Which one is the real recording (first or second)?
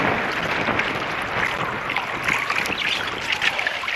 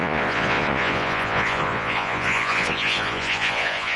first